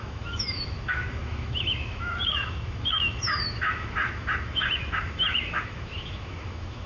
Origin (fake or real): fake